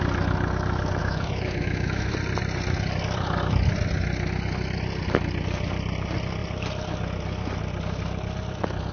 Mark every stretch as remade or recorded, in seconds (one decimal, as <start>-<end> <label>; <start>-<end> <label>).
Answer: 0.0-1.0 recorded; 1.0-2.1 remade; 2.1-8.9 recorded

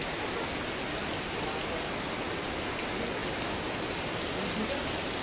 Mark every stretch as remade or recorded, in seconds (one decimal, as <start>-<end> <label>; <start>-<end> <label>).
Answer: 0.0-5.2 recorded

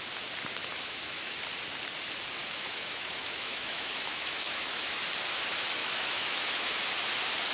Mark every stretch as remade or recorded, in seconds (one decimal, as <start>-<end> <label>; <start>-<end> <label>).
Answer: 0.0-0.6 recorded; 0.6-1.3 remade; 1.3-2.4 recorded; 2.4-5.0 remade; 5.0-5.8 recorded; 5.8-6.8 remade; 6.8-7.5 recorded

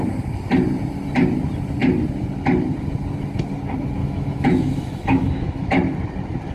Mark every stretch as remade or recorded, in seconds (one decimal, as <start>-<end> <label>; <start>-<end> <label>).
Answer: 0.0-4.0 recorded; 4.0-5.7 remade; 5.7-6.5 recorded

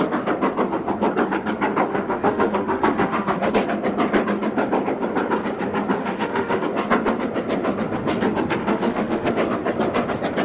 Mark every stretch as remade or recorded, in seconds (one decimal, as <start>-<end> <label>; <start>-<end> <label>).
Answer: 0.0-1.9 recorded; 1.9-3.5 remade; 3.5-6.0 recorded; 6.0-6.6 remade; 6.6-8.6 recorded; 8.6-9.3 remade; 9.3-10.4 recorded

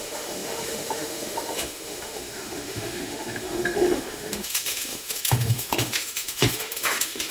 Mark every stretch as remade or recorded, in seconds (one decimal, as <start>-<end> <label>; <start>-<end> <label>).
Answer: 0.0-7.3 remade